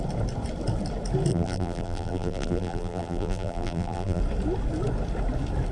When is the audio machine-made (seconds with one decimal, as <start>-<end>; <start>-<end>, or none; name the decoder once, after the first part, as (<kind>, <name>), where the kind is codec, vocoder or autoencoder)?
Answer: 1.3-4.2 (vocoder, BigVGAN v2)